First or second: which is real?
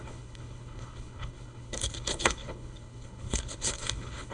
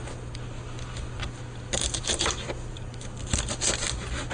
second